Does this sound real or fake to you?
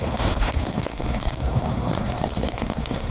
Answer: fake